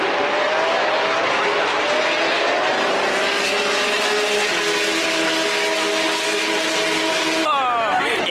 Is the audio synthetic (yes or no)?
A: no